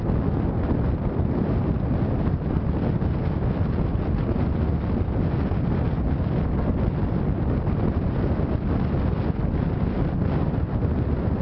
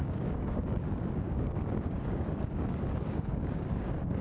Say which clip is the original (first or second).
first